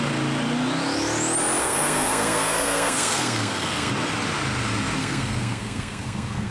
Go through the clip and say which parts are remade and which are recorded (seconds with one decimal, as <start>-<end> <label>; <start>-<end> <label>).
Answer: 0.0-1.6 recorded; 1.6-3.9 remade; 3.9-5.0 recorded; 5.0-6.5 remade